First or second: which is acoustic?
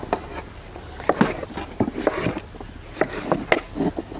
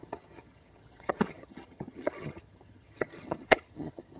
first